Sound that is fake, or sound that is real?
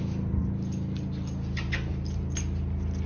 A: real